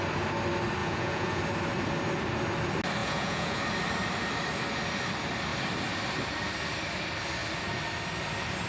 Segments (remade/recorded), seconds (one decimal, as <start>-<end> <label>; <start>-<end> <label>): 0.0-0.8 recorded; 0.8-1.4 remade; 1.4-3.0 recorded; 3.0-3.6 remade; 3.6-8.7 recorded